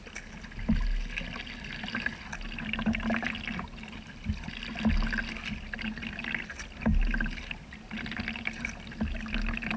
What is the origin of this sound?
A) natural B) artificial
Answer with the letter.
A